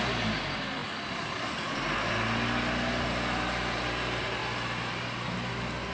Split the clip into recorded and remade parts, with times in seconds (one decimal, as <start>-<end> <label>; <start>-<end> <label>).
0.0-5.9 recorded